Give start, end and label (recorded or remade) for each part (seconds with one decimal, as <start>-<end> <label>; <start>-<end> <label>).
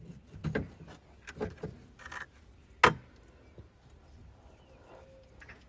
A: 0.0-5.7 recorded